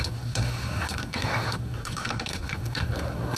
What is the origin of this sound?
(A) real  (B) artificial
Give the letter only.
B